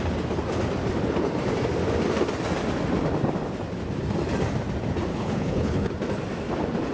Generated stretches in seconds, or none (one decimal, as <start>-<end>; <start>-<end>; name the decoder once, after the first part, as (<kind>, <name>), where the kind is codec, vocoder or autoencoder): 5.1-5.9 (codec, HILCodec)